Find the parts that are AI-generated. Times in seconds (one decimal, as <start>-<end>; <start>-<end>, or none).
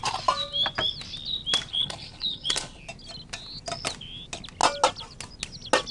1.7-2.8